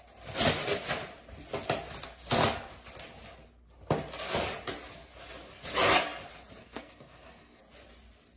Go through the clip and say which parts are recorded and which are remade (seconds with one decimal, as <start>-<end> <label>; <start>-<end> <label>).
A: 0.0-6.6 recorded; 6.6-7.6 remade; 7.6-8.4 recorded